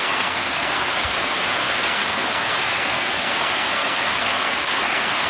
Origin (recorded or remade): remade